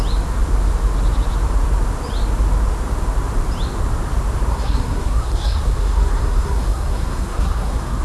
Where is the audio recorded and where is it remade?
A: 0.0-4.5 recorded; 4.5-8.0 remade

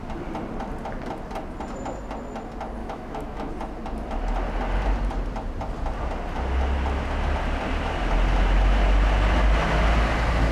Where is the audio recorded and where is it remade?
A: 0.0-2.8 recorded; 2.8-3.5 remade; 3.5-10.5 recorded